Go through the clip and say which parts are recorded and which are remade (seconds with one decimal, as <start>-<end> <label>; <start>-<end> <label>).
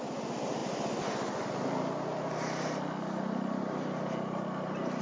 0.0-5.0 recorded